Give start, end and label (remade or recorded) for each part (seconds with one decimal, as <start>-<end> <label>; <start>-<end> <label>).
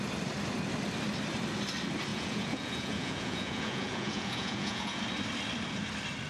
0.0-2.1 recorded; 2.1-5.0 remade; 5.0-6.3 recorded